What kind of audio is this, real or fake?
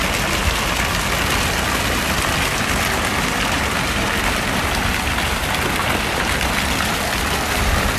real